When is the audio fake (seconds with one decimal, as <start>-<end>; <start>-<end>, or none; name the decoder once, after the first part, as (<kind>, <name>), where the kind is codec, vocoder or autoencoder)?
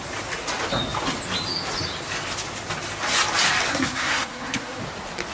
3.7-4.8 (codec, SNAC)